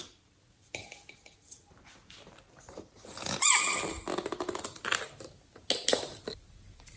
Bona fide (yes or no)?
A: yes